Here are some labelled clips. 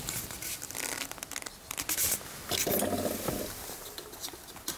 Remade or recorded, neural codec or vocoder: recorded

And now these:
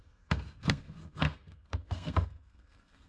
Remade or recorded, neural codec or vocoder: remade, codec, SNAC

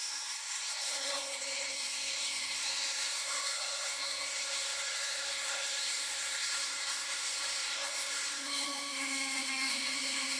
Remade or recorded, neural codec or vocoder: remade, codec, SNAC